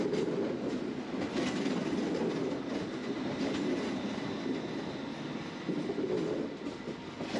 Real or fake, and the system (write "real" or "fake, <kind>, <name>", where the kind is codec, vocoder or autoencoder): real